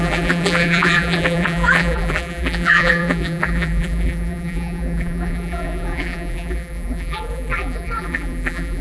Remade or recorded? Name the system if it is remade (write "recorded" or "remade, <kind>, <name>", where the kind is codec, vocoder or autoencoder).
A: remade, vocoder, BigVGAN v2